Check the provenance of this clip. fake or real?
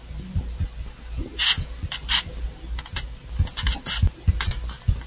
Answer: real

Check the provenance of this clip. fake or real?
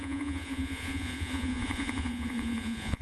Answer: fake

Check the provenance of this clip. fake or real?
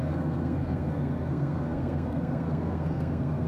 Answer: fake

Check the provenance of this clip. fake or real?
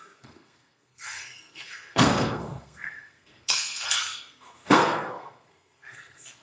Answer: fake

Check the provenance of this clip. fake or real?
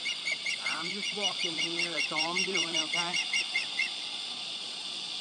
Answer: fake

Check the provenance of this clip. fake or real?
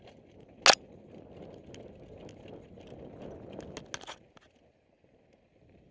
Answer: real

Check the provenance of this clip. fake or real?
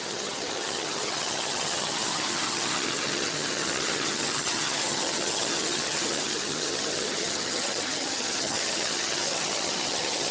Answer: fake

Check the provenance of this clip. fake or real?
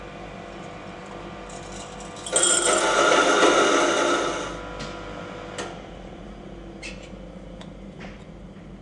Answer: real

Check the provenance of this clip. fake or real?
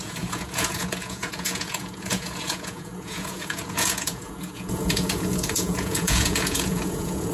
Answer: fake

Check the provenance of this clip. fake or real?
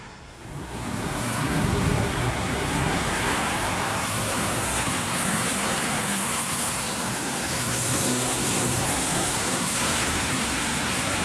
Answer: fake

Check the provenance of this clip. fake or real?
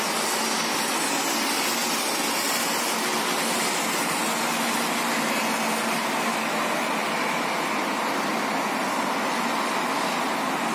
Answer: real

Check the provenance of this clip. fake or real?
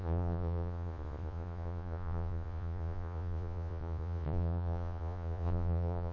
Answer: fake